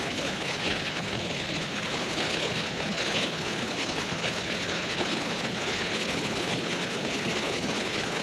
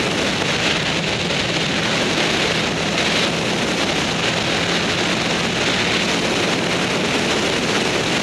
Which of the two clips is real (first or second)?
second